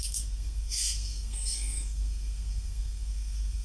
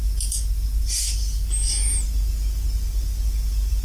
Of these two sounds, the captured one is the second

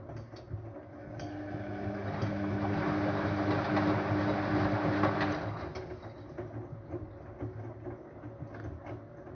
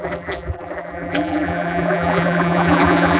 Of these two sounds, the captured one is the first